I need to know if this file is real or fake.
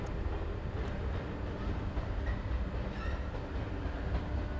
real